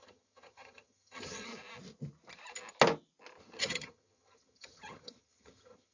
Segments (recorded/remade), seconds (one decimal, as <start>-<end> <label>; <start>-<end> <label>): 0.0-1.5 remade; 1.5-3.4 recorded; 3.4-5.9 remade